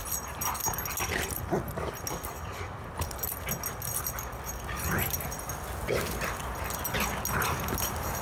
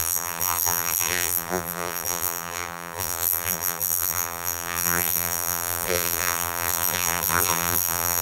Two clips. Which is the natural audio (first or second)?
first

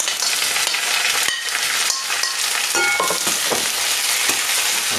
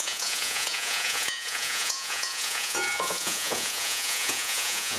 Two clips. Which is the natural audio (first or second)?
first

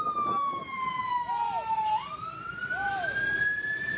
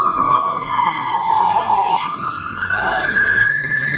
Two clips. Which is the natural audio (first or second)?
first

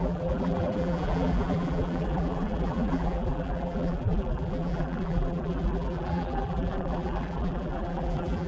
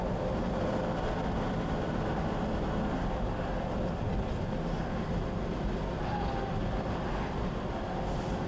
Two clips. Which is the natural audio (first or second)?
second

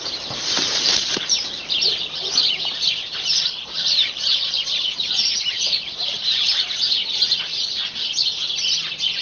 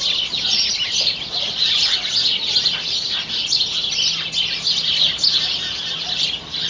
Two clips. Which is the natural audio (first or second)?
second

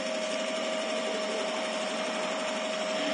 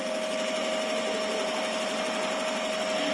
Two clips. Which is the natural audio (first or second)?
second